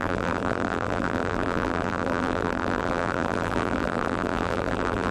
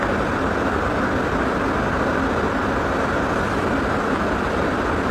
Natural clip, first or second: second